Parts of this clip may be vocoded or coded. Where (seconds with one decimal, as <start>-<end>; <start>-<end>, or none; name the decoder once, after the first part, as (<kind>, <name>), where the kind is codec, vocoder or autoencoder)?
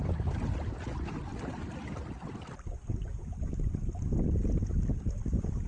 none